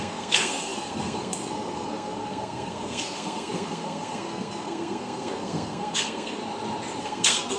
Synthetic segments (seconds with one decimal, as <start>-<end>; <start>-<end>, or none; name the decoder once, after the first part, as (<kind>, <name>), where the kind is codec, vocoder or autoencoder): 0.0-6.4 (codec, SNAC); 7.0-7.6